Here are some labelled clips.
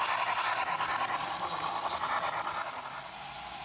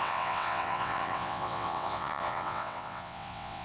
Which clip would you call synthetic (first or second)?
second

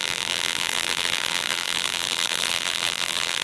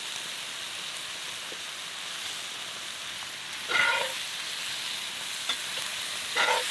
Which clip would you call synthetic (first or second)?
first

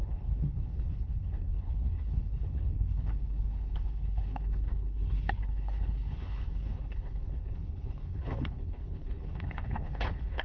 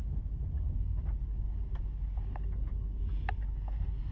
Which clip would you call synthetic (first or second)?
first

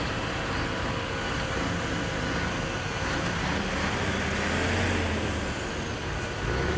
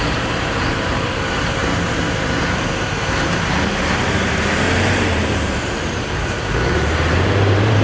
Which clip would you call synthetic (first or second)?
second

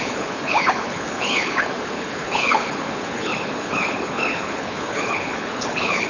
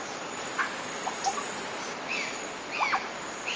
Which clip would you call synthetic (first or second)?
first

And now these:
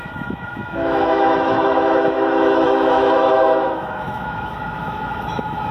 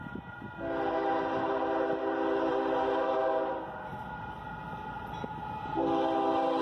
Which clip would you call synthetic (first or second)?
first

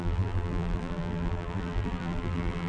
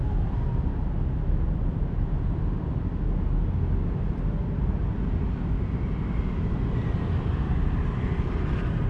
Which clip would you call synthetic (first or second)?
first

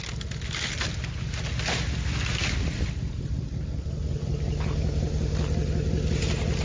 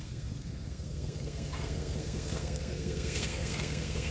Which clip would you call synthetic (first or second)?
second